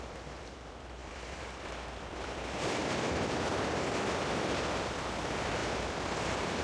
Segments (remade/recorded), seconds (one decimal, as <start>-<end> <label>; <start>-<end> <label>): 0.0-2.8 remade; 2.8-3.9 recorded; 3.9-6.6 remade